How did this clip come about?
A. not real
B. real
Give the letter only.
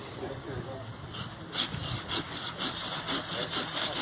B